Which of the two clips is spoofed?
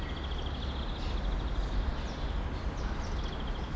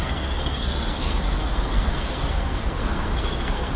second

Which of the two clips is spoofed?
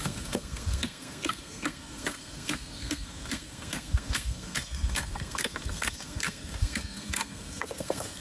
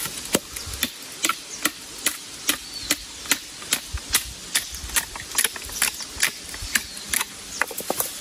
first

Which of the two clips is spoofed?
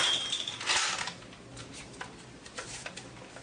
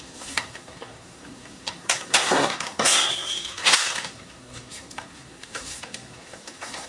second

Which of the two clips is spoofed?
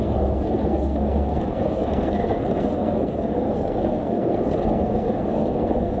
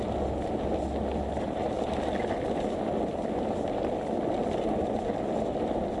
first